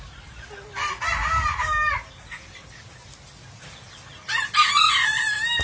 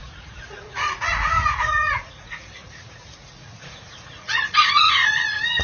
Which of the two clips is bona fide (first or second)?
first